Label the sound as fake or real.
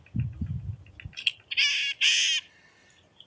real